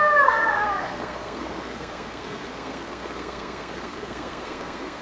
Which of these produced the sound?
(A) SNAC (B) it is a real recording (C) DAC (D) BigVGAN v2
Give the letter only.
A